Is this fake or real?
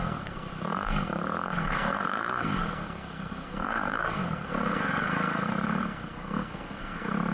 fake